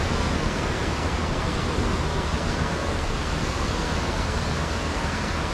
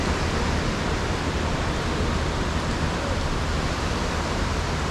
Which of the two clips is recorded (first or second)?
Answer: second